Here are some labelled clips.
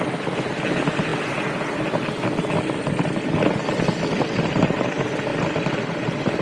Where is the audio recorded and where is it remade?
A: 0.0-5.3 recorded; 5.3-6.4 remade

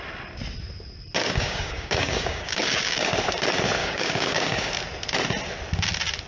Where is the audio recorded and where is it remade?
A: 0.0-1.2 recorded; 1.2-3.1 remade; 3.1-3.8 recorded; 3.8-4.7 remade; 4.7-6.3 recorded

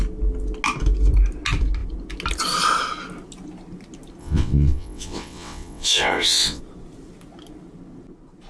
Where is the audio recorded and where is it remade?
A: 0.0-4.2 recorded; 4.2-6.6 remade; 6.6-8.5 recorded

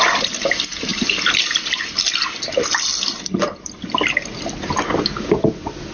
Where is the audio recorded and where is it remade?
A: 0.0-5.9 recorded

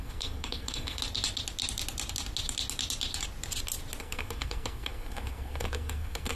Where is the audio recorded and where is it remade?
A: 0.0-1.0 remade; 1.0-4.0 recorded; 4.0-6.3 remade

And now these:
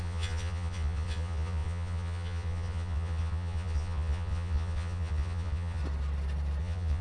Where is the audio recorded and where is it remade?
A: 0.0-5.8 remade; 5.8-6.6 recorded; 6.6-7.0 remade